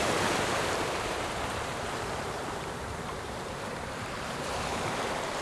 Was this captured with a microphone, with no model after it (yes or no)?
no